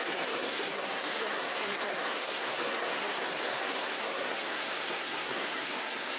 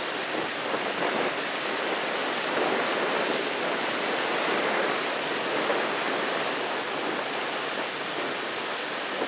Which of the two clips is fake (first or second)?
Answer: first